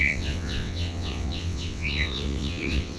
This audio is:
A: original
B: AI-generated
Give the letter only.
B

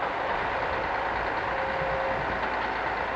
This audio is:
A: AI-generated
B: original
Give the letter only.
B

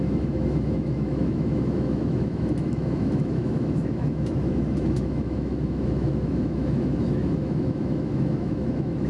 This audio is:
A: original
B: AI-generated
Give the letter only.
B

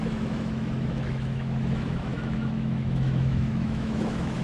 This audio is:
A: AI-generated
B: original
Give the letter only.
A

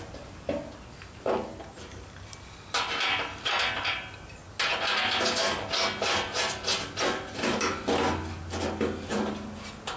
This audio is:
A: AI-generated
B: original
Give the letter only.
B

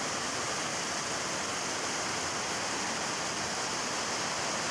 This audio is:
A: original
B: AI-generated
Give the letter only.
A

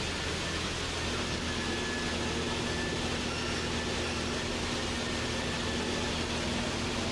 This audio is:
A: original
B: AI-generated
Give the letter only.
A